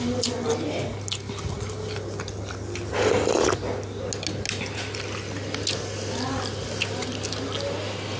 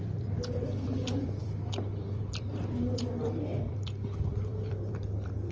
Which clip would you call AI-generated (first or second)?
second